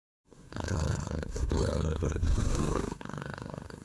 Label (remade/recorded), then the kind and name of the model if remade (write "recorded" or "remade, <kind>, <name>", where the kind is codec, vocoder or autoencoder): remade, codec, SNAC